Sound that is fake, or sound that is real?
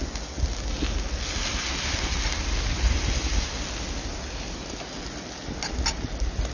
real